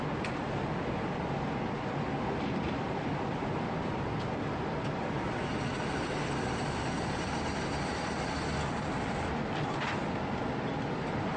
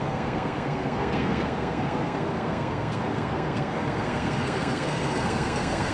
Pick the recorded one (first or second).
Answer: first